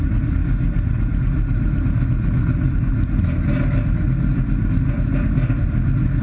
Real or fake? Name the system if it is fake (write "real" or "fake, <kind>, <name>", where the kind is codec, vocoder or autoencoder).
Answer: real